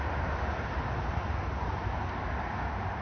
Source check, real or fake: real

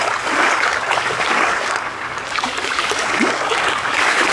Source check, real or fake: fake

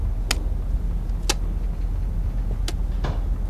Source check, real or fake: real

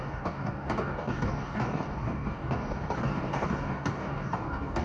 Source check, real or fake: fake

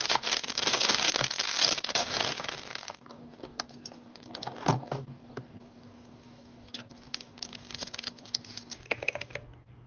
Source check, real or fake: fake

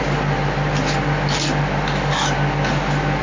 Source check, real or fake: real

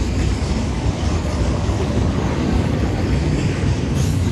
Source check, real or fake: fake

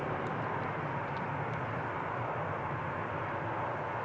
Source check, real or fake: real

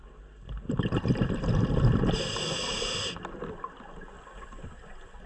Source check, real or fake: real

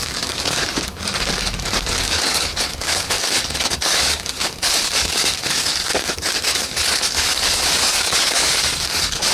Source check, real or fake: fake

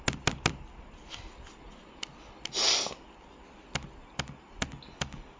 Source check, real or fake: real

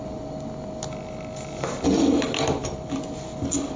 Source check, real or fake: real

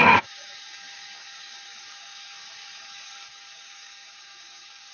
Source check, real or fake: fake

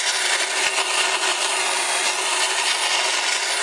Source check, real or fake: real